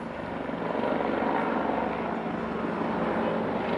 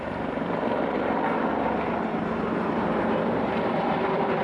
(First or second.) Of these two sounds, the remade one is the second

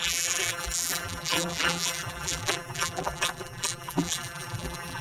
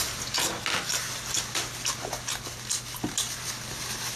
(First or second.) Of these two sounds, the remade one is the first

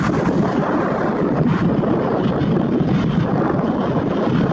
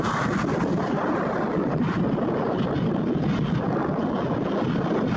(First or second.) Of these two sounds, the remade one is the first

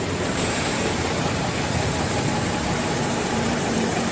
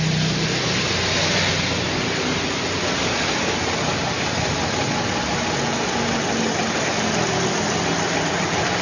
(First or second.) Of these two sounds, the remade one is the first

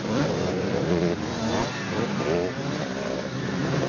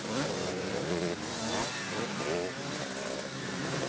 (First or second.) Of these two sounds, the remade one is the first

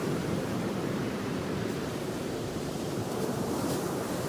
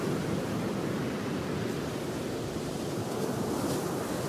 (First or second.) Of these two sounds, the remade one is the first